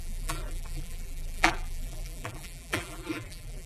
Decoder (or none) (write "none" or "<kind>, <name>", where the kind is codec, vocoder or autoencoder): vocoder, BigVGAN v2